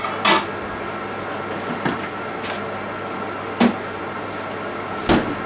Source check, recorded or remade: recorded